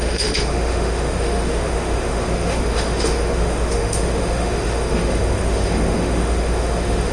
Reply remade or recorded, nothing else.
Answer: remade